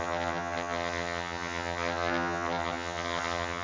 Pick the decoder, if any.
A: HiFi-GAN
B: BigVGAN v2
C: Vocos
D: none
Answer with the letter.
A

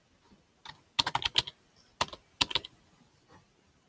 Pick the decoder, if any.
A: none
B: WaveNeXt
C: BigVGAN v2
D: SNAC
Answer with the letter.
A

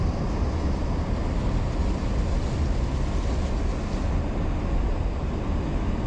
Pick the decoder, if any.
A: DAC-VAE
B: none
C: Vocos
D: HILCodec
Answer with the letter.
B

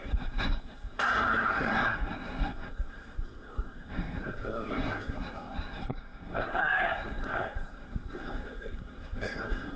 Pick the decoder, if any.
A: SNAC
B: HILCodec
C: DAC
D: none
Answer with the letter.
A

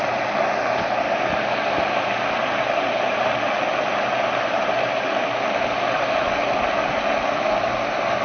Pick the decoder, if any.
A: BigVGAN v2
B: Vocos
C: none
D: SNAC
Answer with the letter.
C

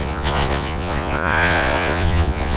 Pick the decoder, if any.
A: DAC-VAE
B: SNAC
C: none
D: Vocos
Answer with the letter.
D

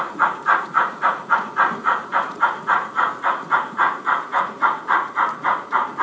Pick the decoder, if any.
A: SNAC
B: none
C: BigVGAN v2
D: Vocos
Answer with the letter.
D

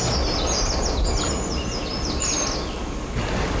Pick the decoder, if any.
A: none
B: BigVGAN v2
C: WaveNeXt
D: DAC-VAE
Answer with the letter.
A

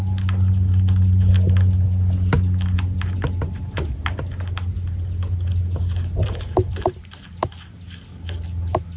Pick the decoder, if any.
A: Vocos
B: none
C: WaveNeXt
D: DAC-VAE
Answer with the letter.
B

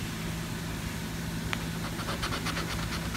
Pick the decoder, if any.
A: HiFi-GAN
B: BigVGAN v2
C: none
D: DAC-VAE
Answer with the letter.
C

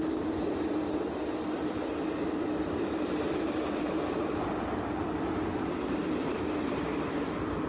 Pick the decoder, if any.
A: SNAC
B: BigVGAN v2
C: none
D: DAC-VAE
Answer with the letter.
C